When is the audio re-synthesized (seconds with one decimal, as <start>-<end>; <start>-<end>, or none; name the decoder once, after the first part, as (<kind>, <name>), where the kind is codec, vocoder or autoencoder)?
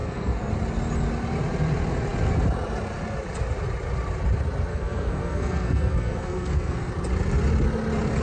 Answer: 0.0-0.5 (codec, SNAC); 4.7-6.9